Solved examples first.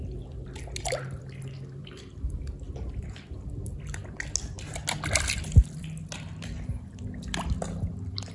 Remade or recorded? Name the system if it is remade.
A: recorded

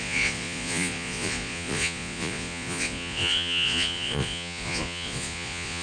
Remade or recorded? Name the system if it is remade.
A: remade, vocoder, Vocos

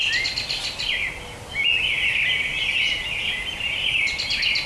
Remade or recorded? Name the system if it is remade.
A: recorded